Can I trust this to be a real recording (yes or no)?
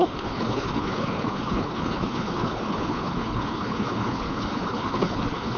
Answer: no